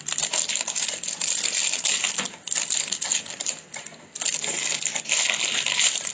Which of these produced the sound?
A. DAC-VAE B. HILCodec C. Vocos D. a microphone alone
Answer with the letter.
D